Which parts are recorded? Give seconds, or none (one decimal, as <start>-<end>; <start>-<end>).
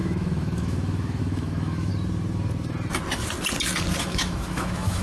1.9-4.0